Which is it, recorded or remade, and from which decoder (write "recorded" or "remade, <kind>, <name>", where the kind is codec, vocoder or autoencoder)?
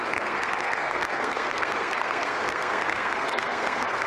remade, codec, SNAC